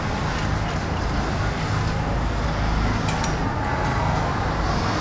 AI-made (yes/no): no